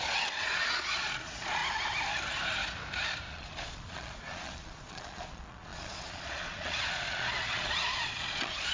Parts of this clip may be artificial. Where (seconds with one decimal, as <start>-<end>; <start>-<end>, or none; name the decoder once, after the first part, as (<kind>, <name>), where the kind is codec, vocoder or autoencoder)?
0.0-1.6 (vocoder, Vocos); 3.3-8.7